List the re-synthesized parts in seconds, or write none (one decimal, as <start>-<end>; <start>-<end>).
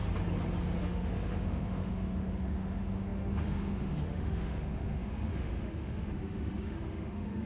0.8-7.5